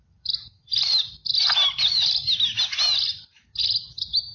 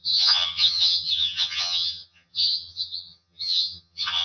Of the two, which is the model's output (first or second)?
second